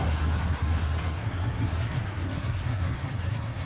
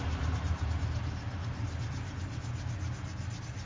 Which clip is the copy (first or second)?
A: first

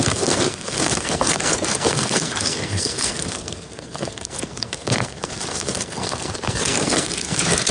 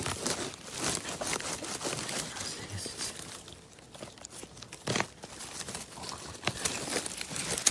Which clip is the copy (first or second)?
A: first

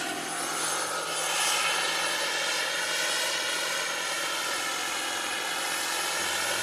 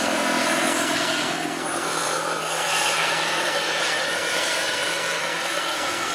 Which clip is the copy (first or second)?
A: second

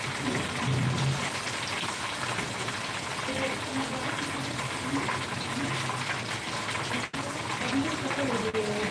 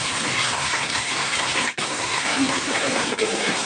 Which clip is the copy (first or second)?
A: second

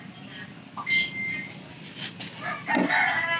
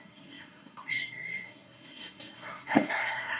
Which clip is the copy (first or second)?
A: second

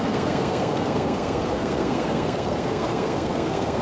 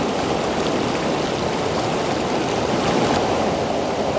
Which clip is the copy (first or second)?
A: first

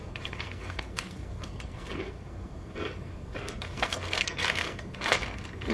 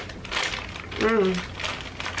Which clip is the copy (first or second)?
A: first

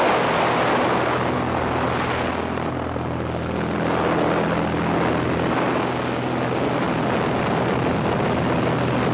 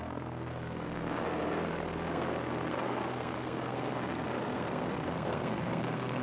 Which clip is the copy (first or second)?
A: second